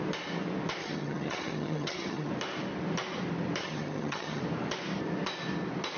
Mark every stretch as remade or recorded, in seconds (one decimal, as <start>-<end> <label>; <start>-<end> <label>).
0.0-0.8 recorded; 0.8-2.3 remade; 2.3-3.6 recorded; 3.6-4.4 remade; 4.4-6.0 recorded

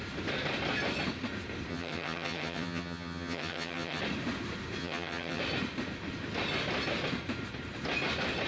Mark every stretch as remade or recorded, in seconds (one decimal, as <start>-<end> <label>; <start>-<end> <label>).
0.0-1.7 recorded; 1.7-4.0 remade; 4.0-4.8 recorded; 4.8-5.4 remade; 5.4-8.5 recorded

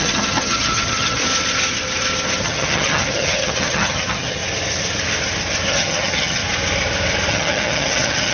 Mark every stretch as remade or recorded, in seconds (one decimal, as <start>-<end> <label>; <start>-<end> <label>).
0.0-1.2 remade; 1.2-2.4 recorded; 2.4-4.4 remade; 4.4-5.7 recorded; 5.7-6.4 remade; 6.4-7.3 recorded; 7.3-8.3 remade

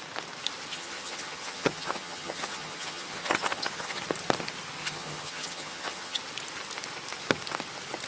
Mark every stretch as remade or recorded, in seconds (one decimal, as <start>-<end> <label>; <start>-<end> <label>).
0.0-0.7 recorded; 0.7-4.0 remade; 4.0-4.8 recorded; 4.8-6.2 remade; 6.2-8.1 recorded